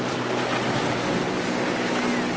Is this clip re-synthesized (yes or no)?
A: no